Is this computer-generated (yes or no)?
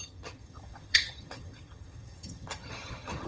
yes